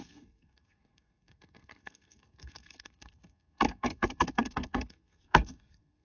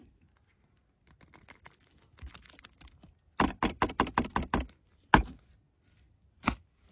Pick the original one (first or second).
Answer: second